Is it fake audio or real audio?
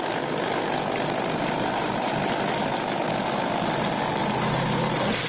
real